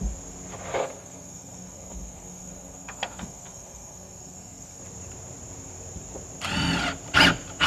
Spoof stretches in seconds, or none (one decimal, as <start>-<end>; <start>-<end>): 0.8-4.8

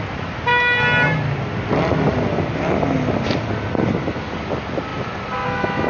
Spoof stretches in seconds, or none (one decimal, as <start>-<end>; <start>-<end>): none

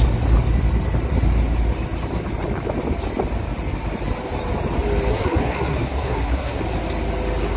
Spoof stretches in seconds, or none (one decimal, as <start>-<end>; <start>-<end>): 5.1-6.6

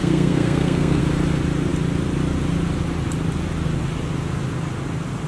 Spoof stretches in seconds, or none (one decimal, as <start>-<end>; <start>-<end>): 0.0-1.0

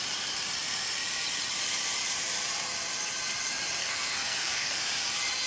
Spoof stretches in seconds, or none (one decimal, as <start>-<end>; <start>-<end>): 3.8-4.8

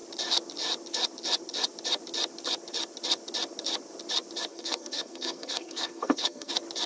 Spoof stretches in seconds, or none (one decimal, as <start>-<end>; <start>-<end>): 4.5-6.5

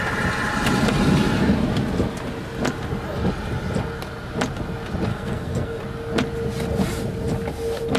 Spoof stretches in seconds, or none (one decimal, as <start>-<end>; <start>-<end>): 5.1-5.8

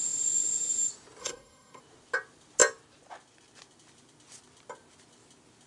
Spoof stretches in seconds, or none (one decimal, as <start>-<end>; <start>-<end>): 1.2-1.8